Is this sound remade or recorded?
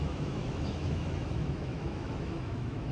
remade